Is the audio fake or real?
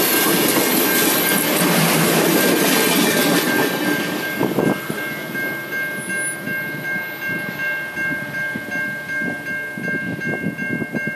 real